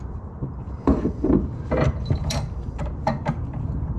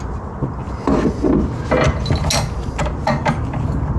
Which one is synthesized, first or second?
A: first